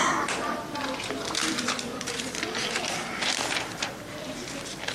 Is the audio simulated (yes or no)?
yes